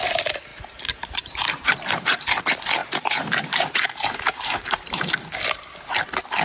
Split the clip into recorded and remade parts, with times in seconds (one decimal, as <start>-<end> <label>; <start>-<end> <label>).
0.0-0.5 recorded; 0.5-2.4 remade; 2.4-2.8 recorded; 2.8-5.1 remade; 5.1-6.4 recorded